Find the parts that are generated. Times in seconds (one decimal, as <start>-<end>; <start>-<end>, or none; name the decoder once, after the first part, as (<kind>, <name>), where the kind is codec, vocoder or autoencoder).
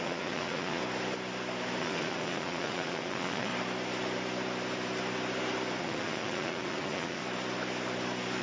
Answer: 0.0-0.8 (vocoder, Vocos); 1.8-3.5; 5.8-7.2